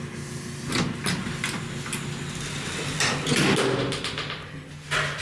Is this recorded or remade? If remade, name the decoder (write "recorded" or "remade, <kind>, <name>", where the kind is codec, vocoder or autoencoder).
recorded